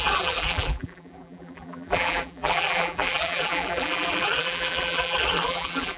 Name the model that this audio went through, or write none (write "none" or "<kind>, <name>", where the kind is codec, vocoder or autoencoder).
vocoder, BigVGAN v2